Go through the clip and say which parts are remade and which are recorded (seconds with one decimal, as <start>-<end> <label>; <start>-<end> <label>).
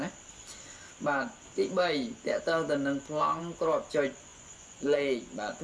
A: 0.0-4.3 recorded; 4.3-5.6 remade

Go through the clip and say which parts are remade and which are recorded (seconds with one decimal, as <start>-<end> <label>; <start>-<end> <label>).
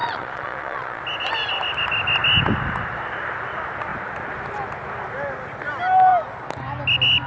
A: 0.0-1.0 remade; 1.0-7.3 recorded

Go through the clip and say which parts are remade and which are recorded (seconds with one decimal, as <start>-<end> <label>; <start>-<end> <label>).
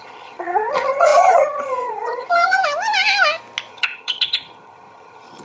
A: 0.0-2.6 remade; 2.6-3.7 recorded; 3.7-5.4 remade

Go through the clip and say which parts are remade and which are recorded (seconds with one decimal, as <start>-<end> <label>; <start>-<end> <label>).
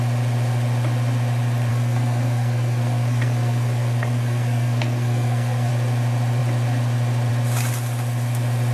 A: 0.0-1.7 recorded; 1.7-5.7 remade; 5.7-8.7 recorded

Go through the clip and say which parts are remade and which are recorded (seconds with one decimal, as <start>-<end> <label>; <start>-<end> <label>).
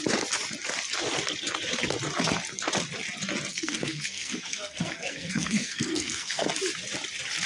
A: 0.0-3.5 recorded; 3.5-6.5 remade; 6.5-7.5 recorded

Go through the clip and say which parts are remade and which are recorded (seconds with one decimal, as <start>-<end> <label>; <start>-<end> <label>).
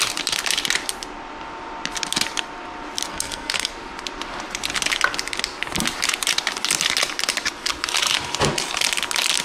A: 0.0-3.1 recorded; 3.1-3.7 remade; 3.7-9.4 recorded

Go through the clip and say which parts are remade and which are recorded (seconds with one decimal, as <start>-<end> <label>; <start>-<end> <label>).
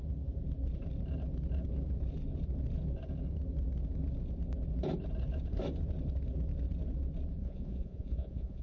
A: 0.0-7.4 recorded; 7.4-8.6 remade